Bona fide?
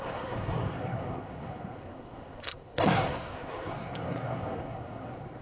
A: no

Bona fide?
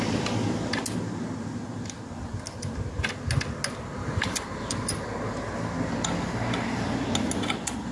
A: yes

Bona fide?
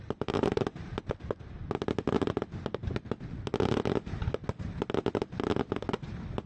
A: yes